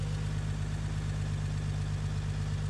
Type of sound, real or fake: real